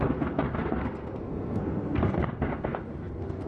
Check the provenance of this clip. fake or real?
fake